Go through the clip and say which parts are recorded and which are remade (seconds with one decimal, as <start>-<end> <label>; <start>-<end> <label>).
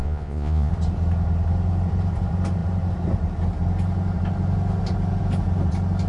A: 0.0-0.7 remade; 0.7-6.1 recorded